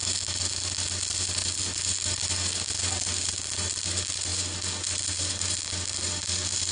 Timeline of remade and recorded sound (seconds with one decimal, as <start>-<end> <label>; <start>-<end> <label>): 0.0-6.7 recorded